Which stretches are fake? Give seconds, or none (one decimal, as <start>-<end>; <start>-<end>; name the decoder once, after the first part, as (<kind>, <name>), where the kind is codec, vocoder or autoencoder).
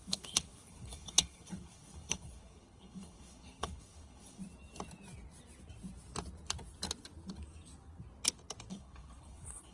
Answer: 0.0-4.4 (codec, HILCodec); 8.7-9.7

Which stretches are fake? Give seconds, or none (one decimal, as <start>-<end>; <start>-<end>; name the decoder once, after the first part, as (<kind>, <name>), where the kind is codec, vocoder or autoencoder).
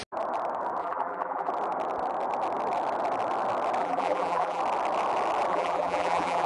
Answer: 0.8-1.5 (vocoder, BigVGAN v2); 3.8-4.6; 5.5-6.5